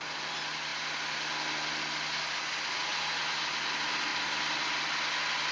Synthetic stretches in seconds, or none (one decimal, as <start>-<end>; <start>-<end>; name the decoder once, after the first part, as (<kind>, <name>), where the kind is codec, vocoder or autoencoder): none